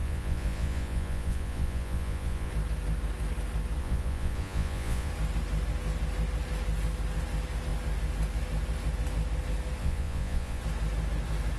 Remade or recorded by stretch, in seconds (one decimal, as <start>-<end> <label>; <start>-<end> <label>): 0.0-2.5 remade; 2.5-3.8 recorded; 3.8-5.1 remade; 5.1-9.8 recorded; 9.8-10.6 remade; 10.6-11.6 recorded